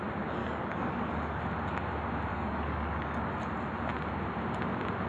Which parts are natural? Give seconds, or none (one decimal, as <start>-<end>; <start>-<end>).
0.0-0.4; 1.4-2.3; 3.3-5.1